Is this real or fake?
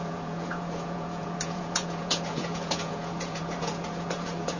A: fake